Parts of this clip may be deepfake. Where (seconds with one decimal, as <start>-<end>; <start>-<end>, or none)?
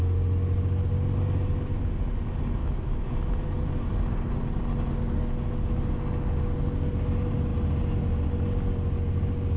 2.6-3.1